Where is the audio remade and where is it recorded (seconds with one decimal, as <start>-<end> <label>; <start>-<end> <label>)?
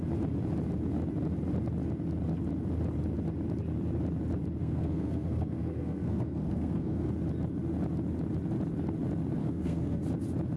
0.0-4.6 recorded; 4.6-7.1 remade; 7.1-9.4 recorded; 9.4-10.0 remade; 10.0-10.6 recorded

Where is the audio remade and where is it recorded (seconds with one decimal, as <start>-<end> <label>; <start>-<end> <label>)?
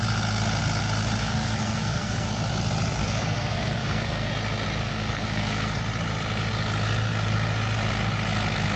0.0-1.2 recorded; 1.2-2.3 remade; 2.3-3.0 recorded; 3.0-4.3 remade; 4.3-4.8 recorded; 4.8-5.8 remade; 5.8-8.8 recorded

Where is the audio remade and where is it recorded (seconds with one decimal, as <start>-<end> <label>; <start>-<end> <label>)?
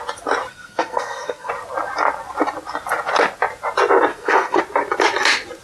0.0-0.5 recorded; 0.5-1.5 remade; 1.5-4.1 recorded; 4.1-4.6 remade; 4.6-5.6 recorded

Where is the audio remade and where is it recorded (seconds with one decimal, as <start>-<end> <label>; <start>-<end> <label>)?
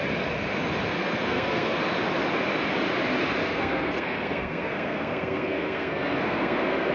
0.0-0.9 recorded; 0.9-1.8 remade; 1.8-3.4 recorded; 3.4-6.9 remade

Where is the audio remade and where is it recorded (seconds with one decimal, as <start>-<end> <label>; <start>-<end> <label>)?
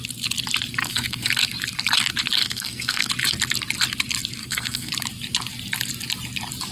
0.0-0.8 recorded; 0.8-1.3 remade; 1.3-2.4 recorded; 2.4-3.1 remade; 3.1-4.4 recorded; 4.4-4.9 remade; 4.9-6.7 recorded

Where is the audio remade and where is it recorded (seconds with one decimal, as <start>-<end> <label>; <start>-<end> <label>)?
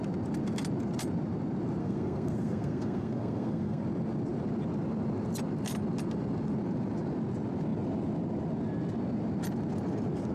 0.0-1.8 recorded; 1.8-3.8 remade; 3.8-10.3 recorded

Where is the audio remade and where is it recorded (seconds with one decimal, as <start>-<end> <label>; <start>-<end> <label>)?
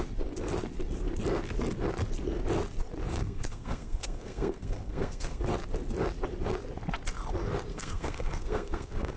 0.0-3.1 recorded; 3.1-5.4 remade; 5.4-7.7 recorded; 7.7-9.2 remade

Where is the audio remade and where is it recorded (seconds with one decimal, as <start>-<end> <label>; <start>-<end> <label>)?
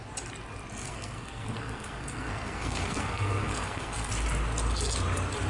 0.0-0.8 recorded; 0.8-4.1 remade; 4.1-5.5 recorded